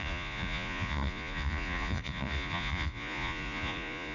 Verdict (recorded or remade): remade